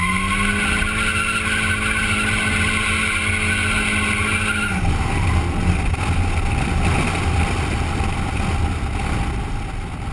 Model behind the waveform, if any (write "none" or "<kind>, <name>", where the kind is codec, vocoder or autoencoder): none